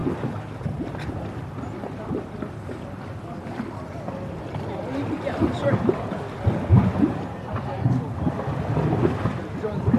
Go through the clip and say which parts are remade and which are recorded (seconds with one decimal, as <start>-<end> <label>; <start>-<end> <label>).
0.0-10.0 recorded